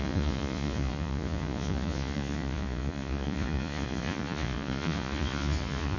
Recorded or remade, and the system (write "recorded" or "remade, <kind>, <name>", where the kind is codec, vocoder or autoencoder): remade, vocoder, Vocos